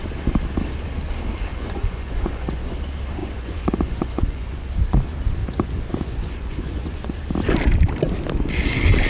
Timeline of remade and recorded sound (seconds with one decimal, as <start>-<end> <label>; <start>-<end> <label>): 0.0-1.5 recorded; 1.5-2.7 remade; 2.7-3.2 recorded; 3.2-4.7 remade; 4.7-5.4 recorded; 5.4-7.1 remade; 7.1-9.1 recorded